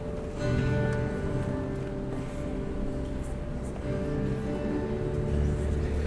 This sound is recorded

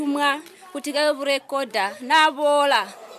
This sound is recorded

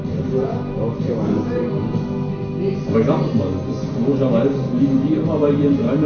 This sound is recorded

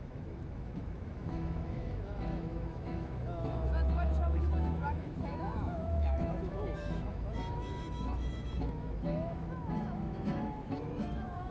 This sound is remade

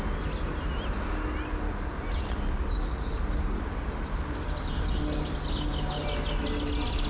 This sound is recorded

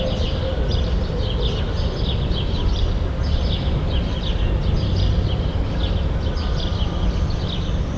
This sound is recorded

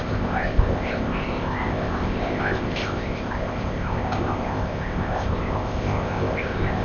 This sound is remade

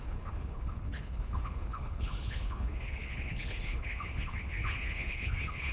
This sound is remade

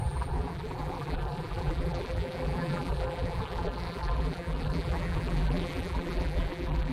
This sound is remade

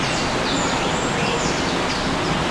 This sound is recorded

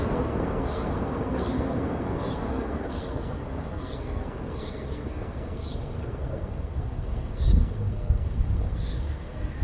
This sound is remade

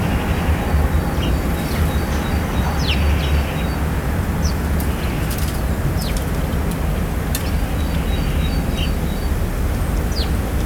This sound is recorded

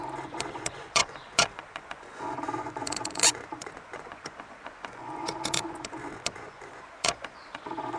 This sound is remade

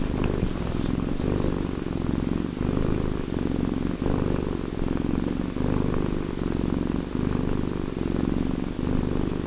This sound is recorded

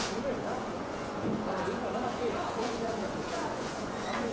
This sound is remade